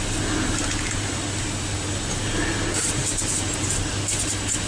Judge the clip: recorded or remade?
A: recorded